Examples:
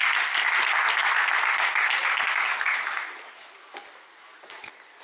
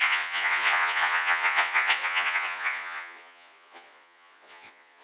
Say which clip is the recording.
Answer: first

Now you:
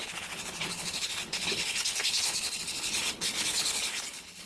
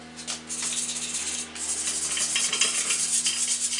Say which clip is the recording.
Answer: second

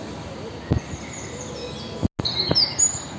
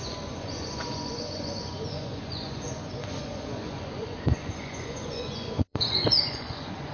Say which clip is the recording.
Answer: first